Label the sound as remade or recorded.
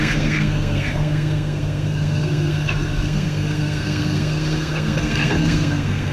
remade